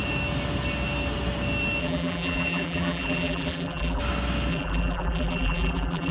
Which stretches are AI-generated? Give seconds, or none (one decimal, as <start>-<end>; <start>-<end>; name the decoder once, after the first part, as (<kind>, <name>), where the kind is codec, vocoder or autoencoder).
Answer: 1.8-4.0 (vocoder, BigVGAN v2); 4.5-6.1